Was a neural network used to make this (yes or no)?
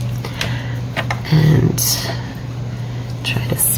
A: no